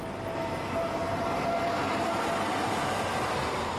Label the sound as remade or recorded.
recorded